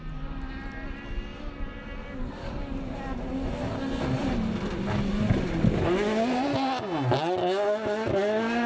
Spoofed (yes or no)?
no